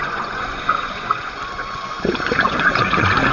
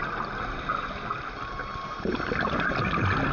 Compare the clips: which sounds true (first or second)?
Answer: second